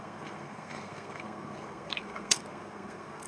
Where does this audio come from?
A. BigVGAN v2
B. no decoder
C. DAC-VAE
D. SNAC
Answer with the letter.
D